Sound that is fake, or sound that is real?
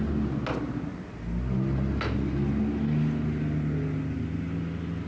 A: real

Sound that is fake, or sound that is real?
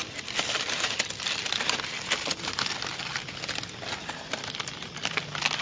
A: real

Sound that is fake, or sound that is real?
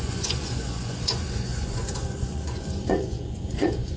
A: fake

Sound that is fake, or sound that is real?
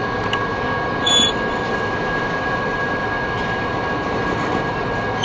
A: real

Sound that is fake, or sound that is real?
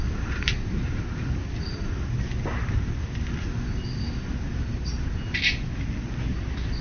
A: real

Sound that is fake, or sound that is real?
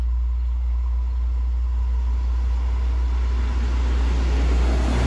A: real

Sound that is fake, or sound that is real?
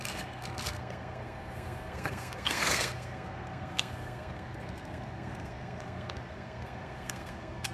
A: fake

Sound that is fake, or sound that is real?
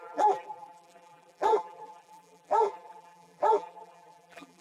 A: fake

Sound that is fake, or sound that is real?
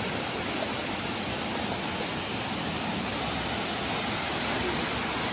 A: real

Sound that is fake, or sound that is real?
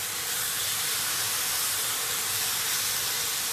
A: real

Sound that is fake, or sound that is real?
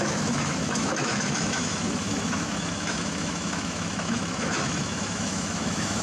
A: fake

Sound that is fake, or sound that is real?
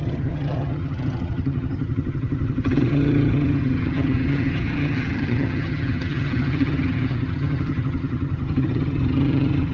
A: fake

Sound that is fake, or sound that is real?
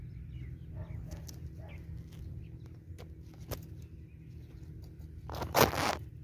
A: real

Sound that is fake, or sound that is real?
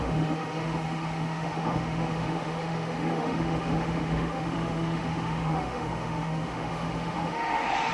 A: fake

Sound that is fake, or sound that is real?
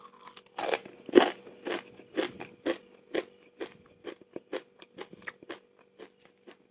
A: real